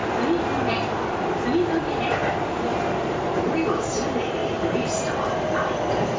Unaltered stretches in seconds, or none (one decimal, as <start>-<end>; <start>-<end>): 0.0-1.7